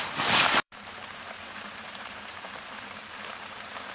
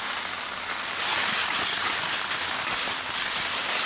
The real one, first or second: second